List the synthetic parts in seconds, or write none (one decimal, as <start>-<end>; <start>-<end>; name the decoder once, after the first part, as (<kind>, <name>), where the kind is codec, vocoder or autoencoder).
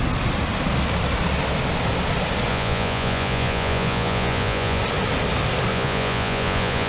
2.5-4.8 (vocoder, Vocos); 5.7-6.9